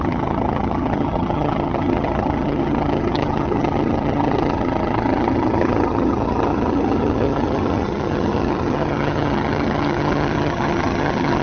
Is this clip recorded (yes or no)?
no